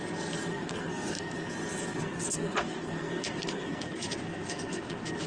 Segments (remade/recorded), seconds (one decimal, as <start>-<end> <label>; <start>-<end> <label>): 0.0-0.5 recorded; 0.5-1.5 remade; 1.5-2.0 recorded; 2.0-5.3 remade